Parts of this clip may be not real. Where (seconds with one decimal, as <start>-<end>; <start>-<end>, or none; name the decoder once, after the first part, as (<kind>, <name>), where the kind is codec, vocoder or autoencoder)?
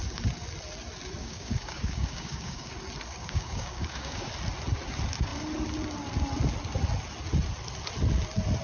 1.2-2.7 (codec, DAC); 3.2-4.3